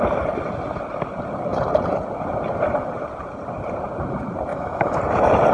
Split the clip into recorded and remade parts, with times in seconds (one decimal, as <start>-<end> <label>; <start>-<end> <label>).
0.0-4.5 recorded; 4.5-5.0 remade; 5.0-5.5 recorded